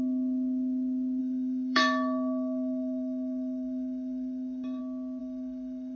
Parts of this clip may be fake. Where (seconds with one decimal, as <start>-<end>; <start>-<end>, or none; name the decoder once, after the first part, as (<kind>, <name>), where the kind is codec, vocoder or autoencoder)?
1.2-4.8 (codec, DAC); 5.2-6.0